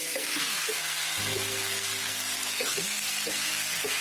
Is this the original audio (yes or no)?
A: no